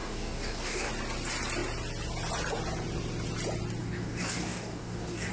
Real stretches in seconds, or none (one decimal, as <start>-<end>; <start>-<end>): 0.9-3.8